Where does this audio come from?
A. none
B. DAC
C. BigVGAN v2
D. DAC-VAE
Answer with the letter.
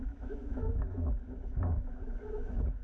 D